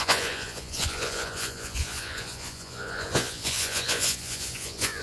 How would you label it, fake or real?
fake